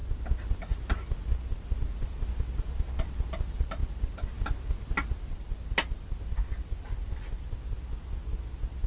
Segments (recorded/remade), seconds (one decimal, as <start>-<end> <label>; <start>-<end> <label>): 0.0-8.9 recorded